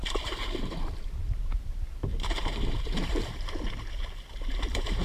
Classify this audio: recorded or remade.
remade